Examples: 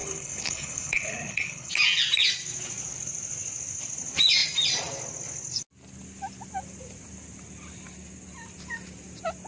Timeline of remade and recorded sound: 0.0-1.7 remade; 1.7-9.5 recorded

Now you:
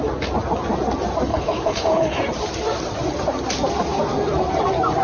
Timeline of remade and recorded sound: 0.0-1.3 recorded; 1.3-2.2 remade; 2.2-5.0 recorded

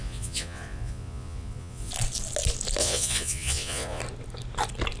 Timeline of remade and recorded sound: 0.0-1.9 remade; 1.9-2.8 recorded; 2.8-4.0 remade; 4.0-5.0 recorded

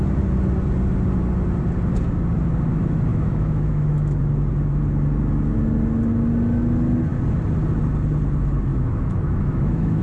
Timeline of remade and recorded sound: 0.0-3.1 recorded; 3.1-4.2 remade; 4.2-8.7 recorded; 8.7-10.0 remade

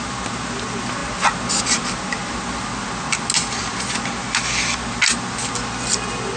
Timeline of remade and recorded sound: 0.0-6.4 recorded

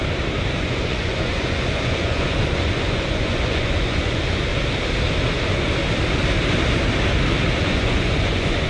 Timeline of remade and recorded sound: 0.0-0.6 recorded; 0.6-4.5 remade; 4.5-5.3 recorded; 5.3-5.8 remade; 5.8-7.6 recorded; 7.6-8.7 remade